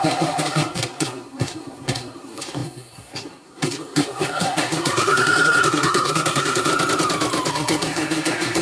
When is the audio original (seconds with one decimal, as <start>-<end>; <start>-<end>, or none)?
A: 6.7-7.5